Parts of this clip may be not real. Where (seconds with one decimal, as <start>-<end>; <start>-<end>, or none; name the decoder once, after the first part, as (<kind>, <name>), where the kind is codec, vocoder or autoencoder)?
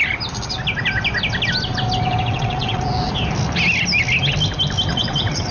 2.3-2.8 (vocoder, WaveNeXt); 4.9-5.5